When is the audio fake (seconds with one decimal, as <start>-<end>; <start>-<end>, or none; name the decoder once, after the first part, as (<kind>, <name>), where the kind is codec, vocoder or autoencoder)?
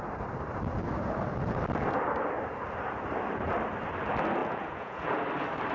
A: 4.4-5.1 (vocoder, Vocos)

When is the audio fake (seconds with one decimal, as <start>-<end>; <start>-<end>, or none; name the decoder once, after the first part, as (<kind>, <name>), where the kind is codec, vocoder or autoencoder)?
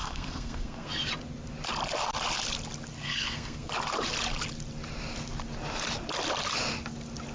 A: 0.0-1.1 (codec, SNAC); 3.0-3.7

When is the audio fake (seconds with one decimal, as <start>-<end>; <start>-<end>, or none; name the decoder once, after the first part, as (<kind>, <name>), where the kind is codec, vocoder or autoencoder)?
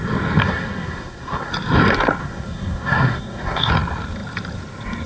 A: 0.4-1.5 (codec, SNAC); 2.2-3.7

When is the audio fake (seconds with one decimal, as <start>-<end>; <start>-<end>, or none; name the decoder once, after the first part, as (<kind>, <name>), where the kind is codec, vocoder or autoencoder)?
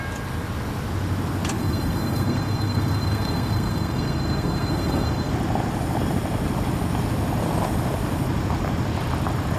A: 1.6-5.3 (codec, SNAC)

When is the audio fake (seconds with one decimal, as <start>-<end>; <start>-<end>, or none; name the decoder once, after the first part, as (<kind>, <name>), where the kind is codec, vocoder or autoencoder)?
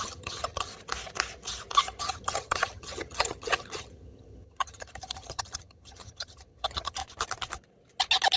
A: 0.0-0.7 (vocoder, HiFi-GAN); 2.0-7.0